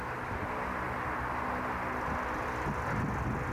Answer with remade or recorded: recorded